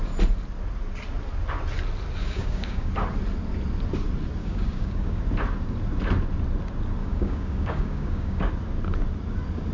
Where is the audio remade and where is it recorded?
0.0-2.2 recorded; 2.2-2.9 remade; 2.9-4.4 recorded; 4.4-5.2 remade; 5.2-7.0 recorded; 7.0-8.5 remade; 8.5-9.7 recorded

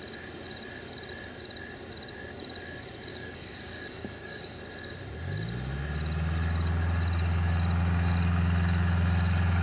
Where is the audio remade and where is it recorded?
0.0-3.1 recorded; 3.1-4.6 remade; 4.6-9.6 recorded

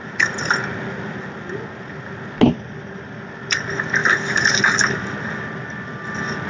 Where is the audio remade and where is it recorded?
0.0-6.5 recorded

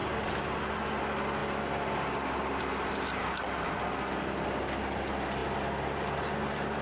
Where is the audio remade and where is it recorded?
0.0-3.2 recorded; 3.2-3.7 remade; 3.7-6.8 recorded

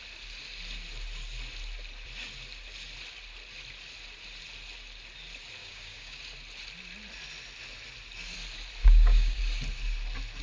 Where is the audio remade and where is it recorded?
0.0-5.6 recorded; 5.6-6.2 remade; 6.2-8.8 recorded; 8.8-9.4 remade; 9.4-10.4 recorded

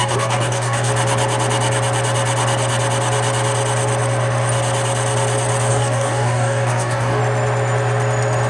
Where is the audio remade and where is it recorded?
0.0-0.9 remade; 0.9-5.7 recorded; 5.7-7.2 remade; 7.2-8.5 recorded

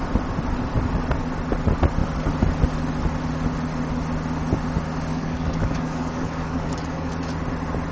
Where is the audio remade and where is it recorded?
0.0-5.1 recorded; 5.1-7.1 remade; 7.1-7.9 recorded

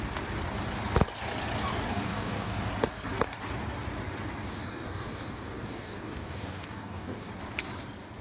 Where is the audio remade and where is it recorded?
0.0-1.7 recorded; 1.7-2.7 remade; 2.7-4.5 recorded; 4.5-7.3 remade; 7.3-8.2 recorded